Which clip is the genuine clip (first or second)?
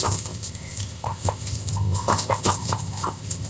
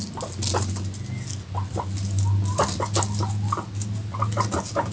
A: second